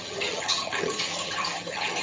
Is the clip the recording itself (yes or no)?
no